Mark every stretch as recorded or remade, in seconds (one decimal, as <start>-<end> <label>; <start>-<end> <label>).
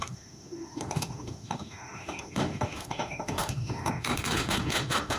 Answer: 0.0-5.2 remade